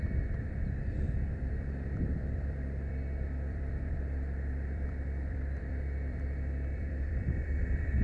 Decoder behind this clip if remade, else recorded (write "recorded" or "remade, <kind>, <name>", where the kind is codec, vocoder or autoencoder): remade, vocoder, BigVGAN v2